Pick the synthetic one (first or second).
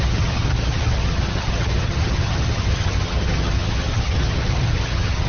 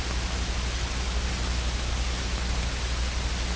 first